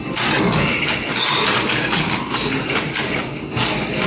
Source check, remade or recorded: recorded